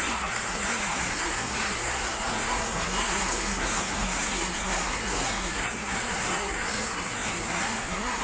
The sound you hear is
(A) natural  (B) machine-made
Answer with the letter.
B